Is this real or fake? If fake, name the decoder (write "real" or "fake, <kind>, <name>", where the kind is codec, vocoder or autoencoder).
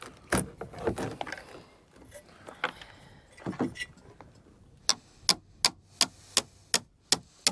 real